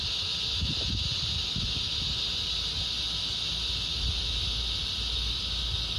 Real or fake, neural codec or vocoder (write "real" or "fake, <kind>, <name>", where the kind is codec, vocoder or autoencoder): real